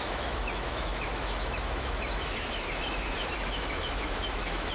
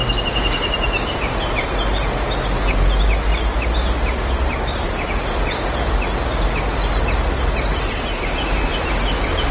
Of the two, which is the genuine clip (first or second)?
second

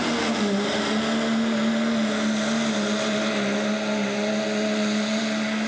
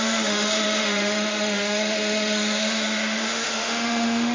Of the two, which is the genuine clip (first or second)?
first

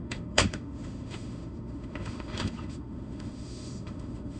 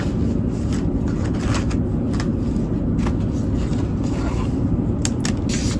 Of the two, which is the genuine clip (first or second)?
second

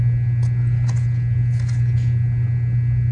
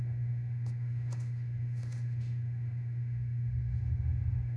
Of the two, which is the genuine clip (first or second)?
first